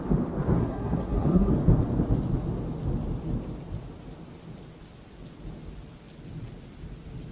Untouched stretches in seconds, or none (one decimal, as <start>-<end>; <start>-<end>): 0.0-0.6; 1.5-7.3